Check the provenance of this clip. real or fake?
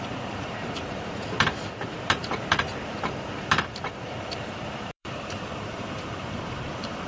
fake